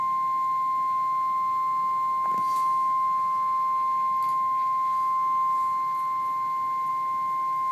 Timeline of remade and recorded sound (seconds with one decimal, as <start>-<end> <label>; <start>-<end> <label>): 0.0-7.7 recorded